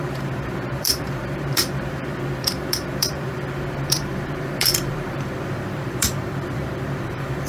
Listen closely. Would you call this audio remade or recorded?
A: remade